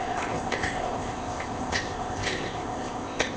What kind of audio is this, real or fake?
fake